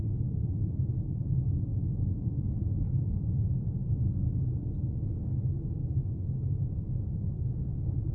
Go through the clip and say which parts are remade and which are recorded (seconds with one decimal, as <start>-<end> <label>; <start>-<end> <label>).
0.0-1.7 recorded; 1.7-2.2 remade; 2.2-8.1 recorded

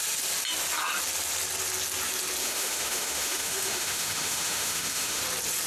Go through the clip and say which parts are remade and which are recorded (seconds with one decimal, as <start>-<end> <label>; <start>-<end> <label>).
0.0-2.4 recorded; 2.4-5.2 remade; 5.2-5.7 recorded

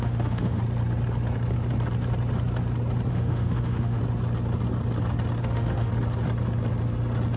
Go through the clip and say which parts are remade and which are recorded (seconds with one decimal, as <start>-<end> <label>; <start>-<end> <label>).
0.0-0.6 remade; 0.6-3.1 recorded; 3.1-4.0 remade; 4.0-5.4 recorded; 5.4-5.9 remade; 5.9-7.4 recorded

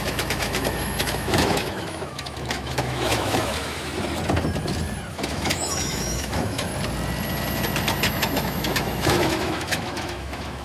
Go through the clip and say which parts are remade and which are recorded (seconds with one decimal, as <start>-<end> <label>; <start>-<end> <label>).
0.0-3.9 remade; 3.9-5.1 recorded; 5.1-6.7 remade; 6.7-8.0 recorded; 8.0-10.6 remade

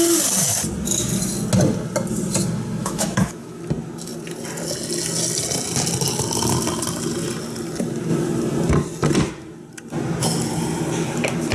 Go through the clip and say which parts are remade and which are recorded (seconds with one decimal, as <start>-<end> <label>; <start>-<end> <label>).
0.0-2.8 recorded; 2.8-3.6 remade; 3.6-11.5 recorded